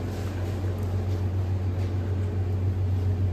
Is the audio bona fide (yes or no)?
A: yes